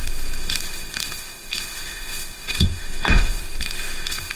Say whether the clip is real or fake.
fake